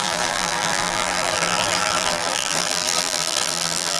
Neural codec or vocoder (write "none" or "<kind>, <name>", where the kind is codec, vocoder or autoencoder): vocoder, BigVGAN v2